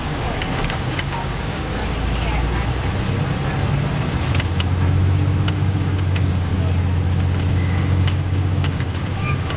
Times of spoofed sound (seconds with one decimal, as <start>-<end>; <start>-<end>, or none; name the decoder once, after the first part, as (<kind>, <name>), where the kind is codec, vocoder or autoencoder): 0.0-1.8 (codec, DAC); 5.5-6.5; 7.5-9.6